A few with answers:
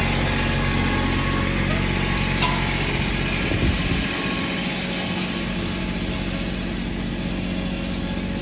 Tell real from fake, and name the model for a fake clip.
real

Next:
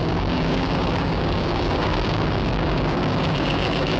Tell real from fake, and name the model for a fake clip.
fake, codec, DAC